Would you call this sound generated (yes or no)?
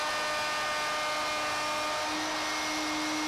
no